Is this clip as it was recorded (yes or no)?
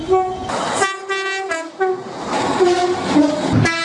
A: yes